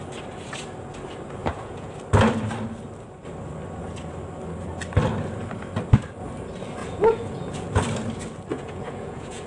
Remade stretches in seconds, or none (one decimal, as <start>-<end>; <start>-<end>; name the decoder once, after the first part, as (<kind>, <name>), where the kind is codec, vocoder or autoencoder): 1.4-1.9 (vocoder, Vocos); 6.8-7.8; 8.5-9.5